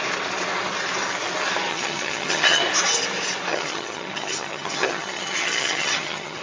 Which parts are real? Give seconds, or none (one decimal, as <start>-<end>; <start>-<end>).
0.0-1.7; 2.6-3.5